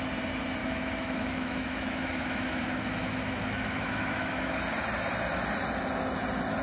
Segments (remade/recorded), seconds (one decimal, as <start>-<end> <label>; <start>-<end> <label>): 0.0-0.6 recorded; 0.6-4.6 remade; 4.6-6.6 recorded